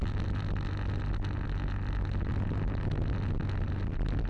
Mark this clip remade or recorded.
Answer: recorded